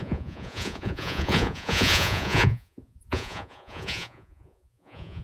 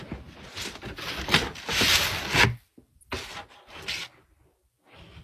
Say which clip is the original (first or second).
second